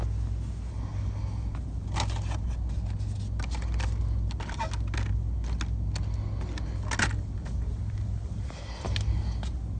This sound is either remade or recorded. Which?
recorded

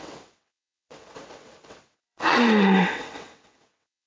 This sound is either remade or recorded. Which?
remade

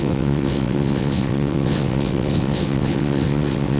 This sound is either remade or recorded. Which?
remade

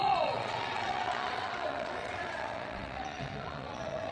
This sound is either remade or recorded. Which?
remade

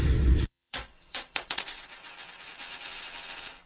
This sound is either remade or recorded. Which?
remade